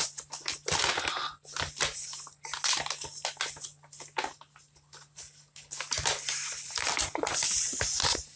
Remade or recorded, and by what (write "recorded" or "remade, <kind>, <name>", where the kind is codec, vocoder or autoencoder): recorded